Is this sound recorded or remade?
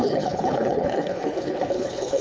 remade